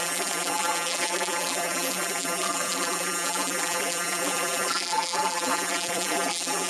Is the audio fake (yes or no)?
yes